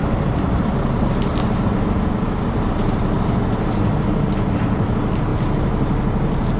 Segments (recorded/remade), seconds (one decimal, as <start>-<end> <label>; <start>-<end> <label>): 0.0-3.0 remade; 3.0-6.6 recorded